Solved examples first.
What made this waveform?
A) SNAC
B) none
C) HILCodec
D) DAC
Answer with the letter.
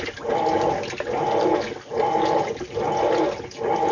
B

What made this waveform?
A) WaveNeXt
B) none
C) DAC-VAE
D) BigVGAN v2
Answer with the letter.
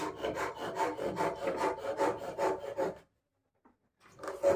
B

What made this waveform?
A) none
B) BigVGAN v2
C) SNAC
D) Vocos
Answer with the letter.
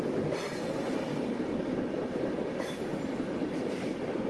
B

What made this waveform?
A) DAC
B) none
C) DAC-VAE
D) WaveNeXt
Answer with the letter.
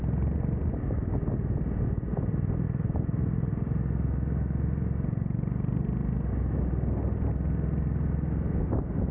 B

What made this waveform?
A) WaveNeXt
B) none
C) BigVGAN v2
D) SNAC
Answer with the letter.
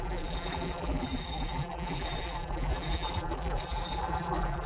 C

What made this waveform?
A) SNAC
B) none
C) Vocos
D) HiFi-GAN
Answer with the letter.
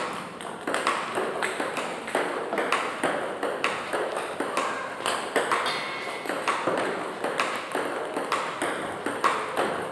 B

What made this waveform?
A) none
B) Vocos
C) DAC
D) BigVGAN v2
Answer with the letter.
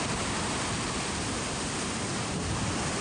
A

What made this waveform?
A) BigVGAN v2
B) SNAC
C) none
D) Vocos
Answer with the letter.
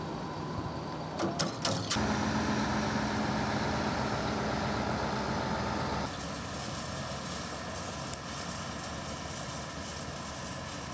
C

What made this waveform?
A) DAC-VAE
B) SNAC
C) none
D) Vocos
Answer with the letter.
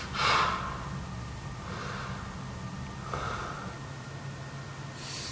C